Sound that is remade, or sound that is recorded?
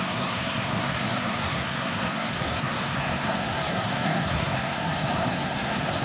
remade